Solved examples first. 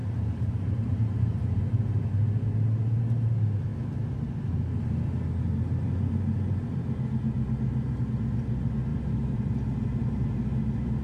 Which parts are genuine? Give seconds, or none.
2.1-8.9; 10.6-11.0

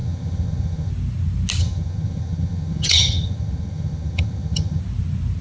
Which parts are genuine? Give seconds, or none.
0.9-1.6; 4.8-5.4